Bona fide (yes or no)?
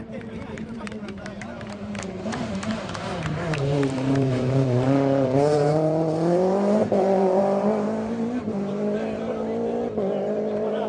no